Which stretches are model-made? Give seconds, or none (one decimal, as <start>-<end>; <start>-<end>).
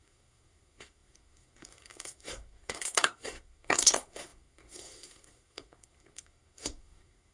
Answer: 0.0-7.3